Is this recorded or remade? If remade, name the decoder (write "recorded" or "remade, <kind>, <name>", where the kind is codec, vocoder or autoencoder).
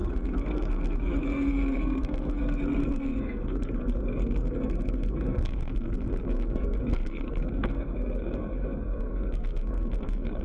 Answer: remade, codec, SNAC